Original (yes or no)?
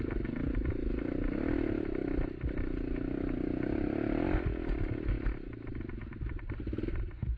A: yes